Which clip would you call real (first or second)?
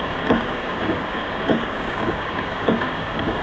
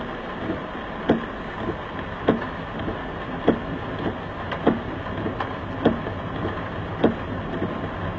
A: second